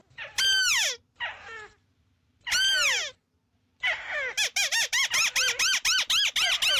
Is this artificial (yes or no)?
no